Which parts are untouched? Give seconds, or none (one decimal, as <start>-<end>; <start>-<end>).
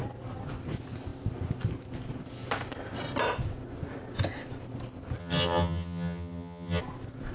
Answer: 0.0-5.2; 6.8-7.3